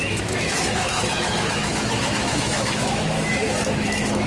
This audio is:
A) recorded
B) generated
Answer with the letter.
B